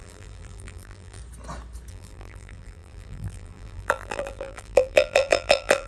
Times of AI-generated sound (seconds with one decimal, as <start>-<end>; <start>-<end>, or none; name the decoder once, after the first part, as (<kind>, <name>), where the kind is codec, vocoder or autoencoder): 0.0-1.2 (vocoder, BigVGAN v2); 1.9-5.9